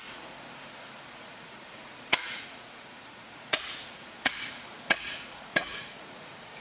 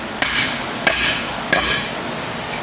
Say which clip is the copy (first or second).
first